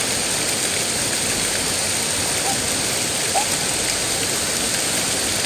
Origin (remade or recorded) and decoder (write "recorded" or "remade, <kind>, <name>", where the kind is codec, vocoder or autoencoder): recorded